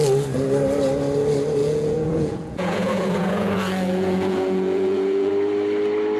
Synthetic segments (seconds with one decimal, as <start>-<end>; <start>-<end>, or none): 1.6-5.3